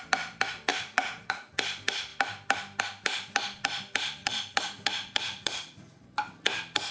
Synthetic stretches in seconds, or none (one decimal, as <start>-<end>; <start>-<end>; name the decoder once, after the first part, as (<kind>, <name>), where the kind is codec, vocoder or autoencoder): 0.7-1.5 (vocoder, Vocos); 4.2-6.0